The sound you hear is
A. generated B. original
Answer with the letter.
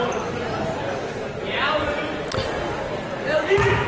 B